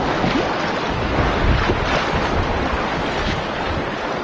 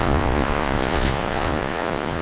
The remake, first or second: second